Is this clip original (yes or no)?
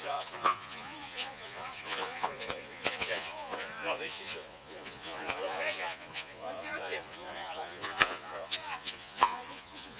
no